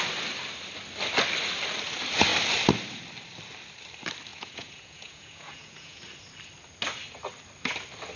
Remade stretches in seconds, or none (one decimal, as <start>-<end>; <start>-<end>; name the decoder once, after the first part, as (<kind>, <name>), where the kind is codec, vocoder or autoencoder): 4.3-6.0 (vocoder, Vocos)